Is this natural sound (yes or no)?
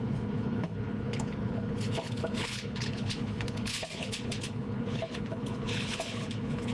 no